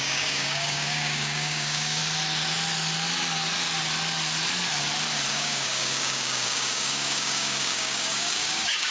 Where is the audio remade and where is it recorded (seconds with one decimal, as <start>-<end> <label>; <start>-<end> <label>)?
0.0-2.0 remade; 2.0-5.3 recorded; 5.3-8.9 remade